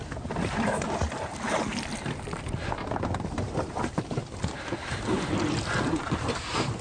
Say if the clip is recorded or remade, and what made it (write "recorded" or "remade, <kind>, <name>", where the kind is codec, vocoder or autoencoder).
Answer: recorded